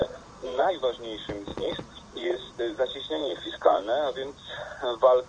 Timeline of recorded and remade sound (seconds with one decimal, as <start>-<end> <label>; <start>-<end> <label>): 0.0-0.7 remade; 0.7-1.5 recorded; 1.5-2.6 remade; 2.6-3.2 recorded; 3.2-3.8 remade; 3.8-5.3 recorded